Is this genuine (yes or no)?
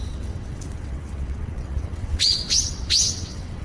no